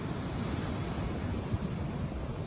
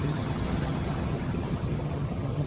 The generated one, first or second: second